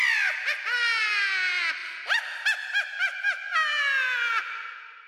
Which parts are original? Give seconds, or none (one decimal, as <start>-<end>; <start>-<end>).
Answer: 0.0-5.1